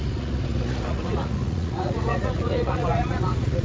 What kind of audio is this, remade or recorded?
remade